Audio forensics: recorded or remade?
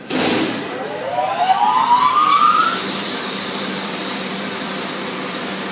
remade